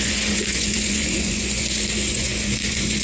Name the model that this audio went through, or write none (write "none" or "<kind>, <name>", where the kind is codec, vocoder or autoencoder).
vocoder, Vocos